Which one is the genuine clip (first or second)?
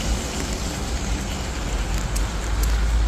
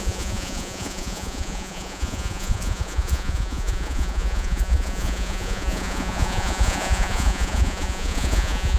first